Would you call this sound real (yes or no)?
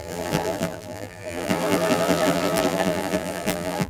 no